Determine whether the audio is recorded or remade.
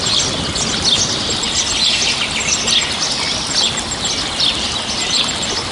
recorded